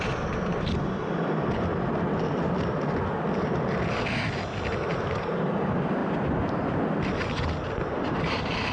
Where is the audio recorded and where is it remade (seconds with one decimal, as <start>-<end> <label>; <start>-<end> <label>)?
0.0-1.7 remade; 1.7-4.9 recorded; 4.9-6.0 remade; 6.0-7.9 recorded; 7.9-8.7 remade